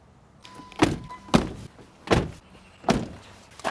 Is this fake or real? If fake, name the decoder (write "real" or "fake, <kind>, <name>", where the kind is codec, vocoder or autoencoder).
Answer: real